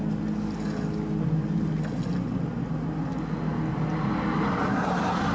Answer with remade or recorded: recorded